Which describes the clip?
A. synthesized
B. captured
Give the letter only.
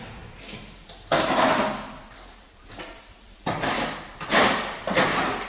A